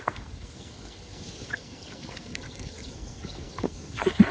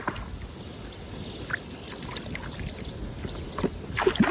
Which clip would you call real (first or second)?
second